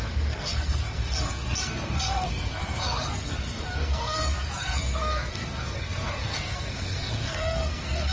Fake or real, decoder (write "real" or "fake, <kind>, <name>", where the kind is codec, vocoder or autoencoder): fake, codec, SNAC